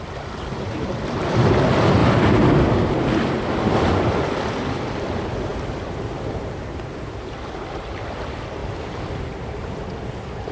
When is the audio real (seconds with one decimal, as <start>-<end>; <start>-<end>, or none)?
2.0-3.5; 5.5-7.6; 8.6-9.2